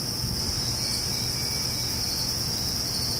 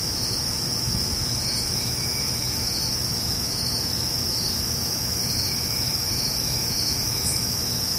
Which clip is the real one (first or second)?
first